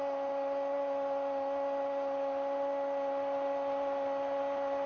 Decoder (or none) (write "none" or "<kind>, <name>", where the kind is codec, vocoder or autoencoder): none